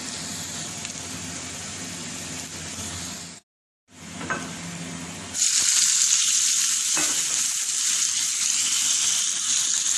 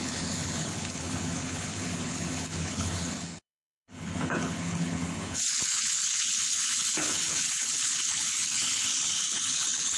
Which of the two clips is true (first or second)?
first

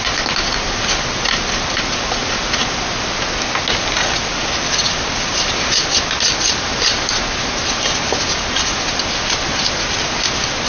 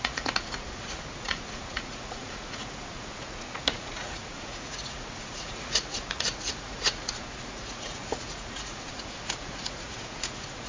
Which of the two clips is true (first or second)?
first